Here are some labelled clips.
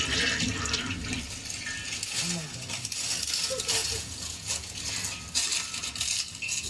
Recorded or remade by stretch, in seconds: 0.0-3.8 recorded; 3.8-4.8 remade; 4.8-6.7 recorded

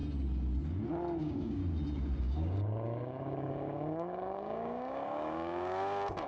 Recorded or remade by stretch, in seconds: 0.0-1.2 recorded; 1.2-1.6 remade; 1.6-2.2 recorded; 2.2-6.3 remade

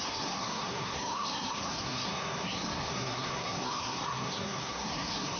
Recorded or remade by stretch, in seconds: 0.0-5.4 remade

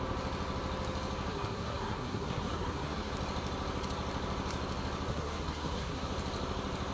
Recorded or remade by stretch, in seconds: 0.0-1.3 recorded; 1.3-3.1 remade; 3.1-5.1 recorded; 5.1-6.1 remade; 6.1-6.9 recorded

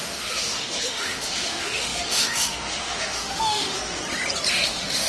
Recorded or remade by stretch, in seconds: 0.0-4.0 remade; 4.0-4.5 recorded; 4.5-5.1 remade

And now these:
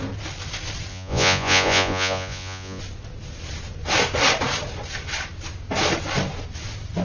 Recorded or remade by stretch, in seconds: 0.0-0.9 recorded; 0.9-2.8 remade; 2.8-7.0 recorded